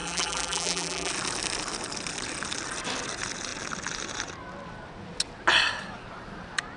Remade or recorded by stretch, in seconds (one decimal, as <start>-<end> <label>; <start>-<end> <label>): 0.0-1.1 remade; 1.1-6.8 recorded